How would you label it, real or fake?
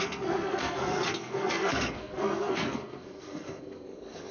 fake